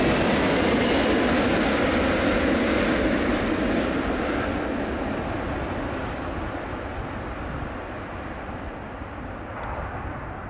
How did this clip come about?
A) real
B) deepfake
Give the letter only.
A